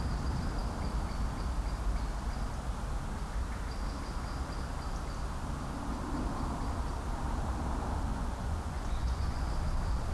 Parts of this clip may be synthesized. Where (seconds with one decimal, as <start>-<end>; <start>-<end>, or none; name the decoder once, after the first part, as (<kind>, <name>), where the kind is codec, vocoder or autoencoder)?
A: 8.1-9.5 (vocoder, Vocos)